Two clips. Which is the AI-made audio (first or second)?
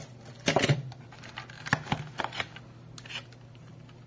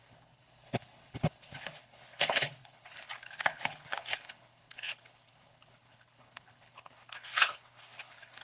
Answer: second